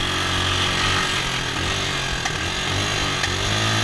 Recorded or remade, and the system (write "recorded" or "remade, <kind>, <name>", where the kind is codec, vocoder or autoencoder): recorded